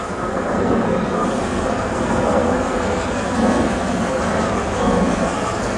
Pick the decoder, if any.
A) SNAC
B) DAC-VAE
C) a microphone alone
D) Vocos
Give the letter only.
A